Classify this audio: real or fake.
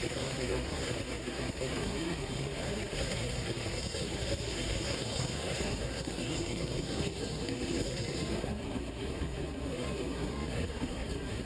fake